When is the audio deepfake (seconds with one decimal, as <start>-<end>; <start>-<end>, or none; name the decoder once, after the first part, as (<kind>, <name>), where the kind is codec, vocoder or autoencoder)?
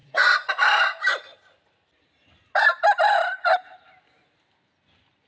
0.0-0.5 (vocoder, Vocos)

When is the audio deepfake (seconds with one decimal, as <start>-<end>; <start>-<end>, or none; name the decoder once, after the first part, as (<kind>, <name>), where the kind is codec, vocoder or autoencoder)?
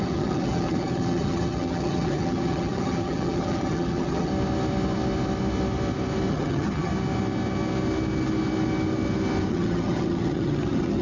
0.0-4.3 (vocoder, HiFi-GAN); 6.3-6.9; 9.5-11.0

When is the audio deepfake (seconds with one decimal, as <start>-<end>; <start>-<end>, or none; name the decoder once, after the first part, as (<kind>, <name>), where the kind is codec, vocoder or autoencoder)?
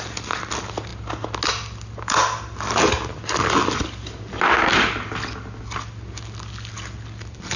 none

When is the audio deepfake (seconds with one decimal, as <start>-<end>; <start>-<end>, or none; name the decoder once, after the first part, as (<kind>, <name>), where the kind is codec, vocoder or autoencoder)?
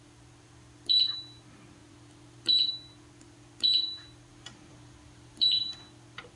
1.8-2.7 (vocoder, BigVGAN v2); 4.3-5.7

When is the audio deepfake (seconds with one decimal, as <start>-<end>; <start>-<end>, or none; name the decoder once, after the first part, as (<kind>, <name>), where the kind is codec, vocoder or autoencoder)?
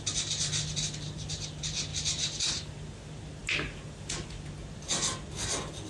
none